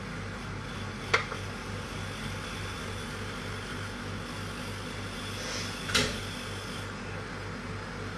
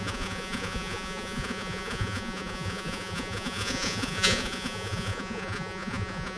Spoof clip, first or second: second